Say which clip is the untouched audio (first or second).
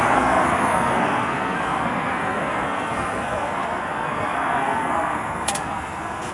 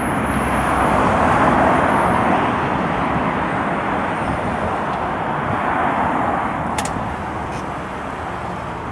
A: second